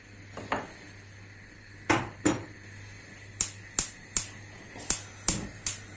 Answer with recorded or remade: recorded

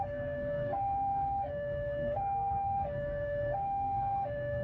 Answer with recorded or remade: remade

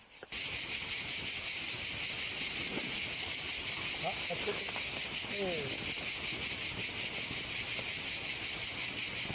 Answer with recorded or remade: recorded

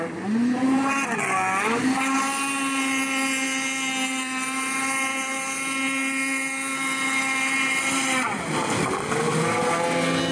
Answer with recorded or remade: recorded